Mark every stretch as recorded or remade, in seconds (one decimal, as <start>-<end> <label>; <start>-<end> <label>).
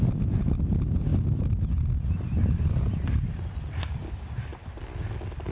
0.0-5.5 recorded